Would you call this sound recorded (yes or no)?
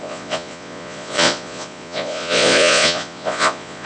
no